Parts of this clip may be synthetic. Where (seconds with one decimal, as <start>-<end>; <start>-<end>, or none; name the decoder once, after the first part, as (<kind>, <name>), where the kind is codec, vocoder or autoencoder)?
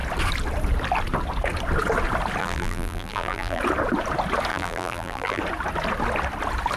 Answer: 2.4-3.6 (vocoder, BigVGAN v2); 4.5-5.4